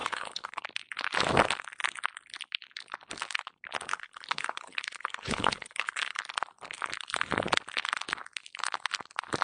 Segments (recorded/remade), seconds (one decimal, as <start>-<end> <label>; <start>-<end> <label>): 0.0-0.6 remade; 0.6-3.9 recorded; 3.9-6.2 remade; 6.2-9.4 recorded